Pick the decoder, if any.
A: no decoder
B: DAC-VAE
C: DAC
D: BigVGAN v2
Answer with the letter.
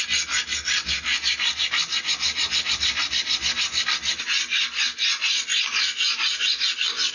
A